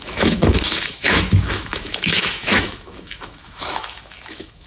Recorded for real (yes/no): no